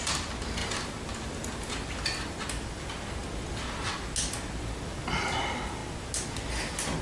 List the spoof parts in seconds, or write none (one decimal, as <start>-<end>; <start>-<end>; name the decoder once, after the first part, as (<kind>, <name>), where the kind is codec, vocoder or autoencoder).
none